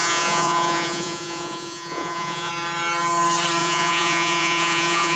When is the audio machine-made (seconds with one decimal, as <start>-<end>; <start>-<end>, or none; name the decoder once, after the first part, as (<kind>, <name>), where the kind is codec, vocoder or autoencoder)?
0.0-2.5 (vocoder, Vocos); 3.6-5.2